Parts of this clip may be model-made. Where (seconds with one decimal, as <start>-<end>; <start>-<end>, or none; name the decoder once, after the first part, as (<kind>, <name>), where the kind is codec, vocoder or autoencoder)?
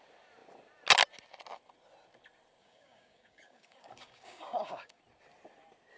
2.6-5.0 (codec, DAC)